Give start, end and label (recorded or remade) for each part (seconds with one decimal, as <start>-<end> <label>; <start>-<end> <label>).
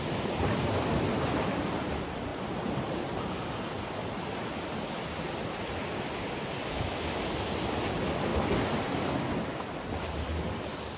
0.0-2.3 recorded; 2.3-2.9 remade; 2.9-11.0 recorded